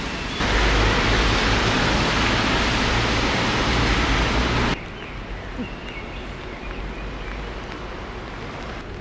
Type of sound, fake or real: real